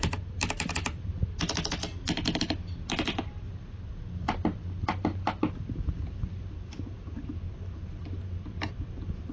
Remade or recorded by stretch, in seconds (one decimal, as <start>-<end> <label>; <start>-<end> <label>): 0.0-9.3 recorded